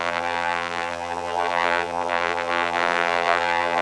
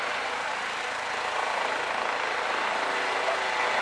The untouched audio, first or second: second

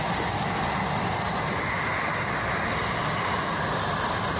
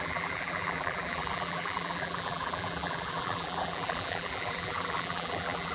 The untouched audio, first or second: first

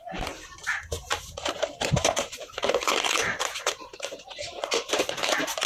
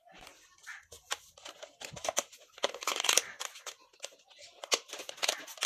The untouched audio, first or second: second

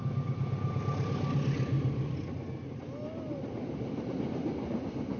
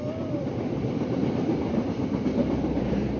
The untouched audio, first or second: first